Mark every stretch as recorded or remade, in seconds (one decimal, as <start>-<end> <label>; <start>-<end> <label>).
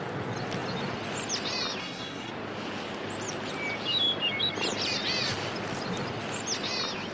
0.0-1.8 recorded; 1.8-2.3 remade; 2.3-7.1 recorded